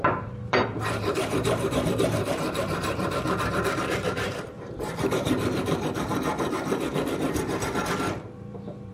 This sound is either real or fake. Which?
fake